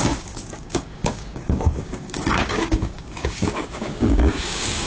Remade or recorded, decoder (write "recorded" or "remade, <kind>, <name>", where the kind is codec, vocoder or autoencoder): remade, codec, DAC